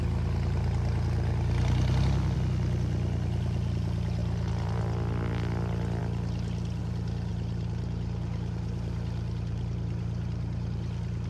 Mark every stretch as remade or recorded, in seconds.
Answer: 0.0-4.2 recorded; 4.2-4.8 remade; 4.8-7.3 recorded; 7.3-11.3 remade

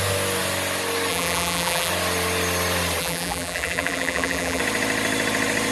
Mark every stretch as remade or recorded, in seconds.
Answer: 0.0-1.1 recorded; 1.1-1.9 remade; 1.9-3.0 recorded; 3.0-4.6 remade; 4.6-5.7 recorded

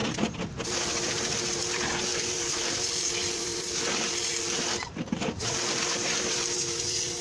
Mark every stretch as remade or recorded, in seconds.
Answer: 0.0-0.8 recorded; 0.8-7.2 remade

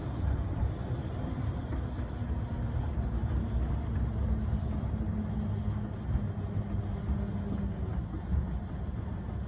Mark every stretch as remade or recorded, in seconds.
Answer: 0.0-1.8 remade; 1.8-9.5 recorded

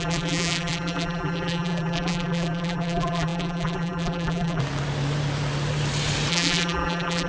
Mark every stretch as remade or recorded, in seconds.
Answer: 0.0-4.6 remade; 4.6-6.3 recorded; 6.3-7.3 remade

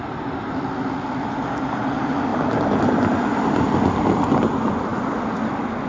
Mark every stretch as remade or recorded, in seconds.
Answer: 0.0-5.9 recorded

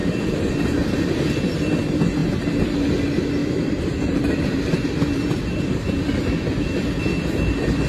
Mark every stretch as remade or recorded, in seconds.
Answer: 0.0-1.4 remade; 1.4-3.4 recorded; 3.4-7.9 remade